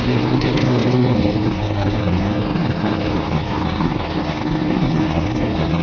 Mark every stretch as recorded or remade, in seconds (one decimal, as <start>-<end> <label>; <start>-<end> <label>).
0.0-5.8 remade